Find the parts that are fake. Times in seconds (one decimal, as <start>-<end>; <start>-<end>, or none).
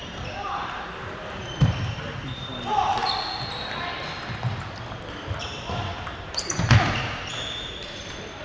0.0-1.4; 1.9-3.0; 5.3-8.4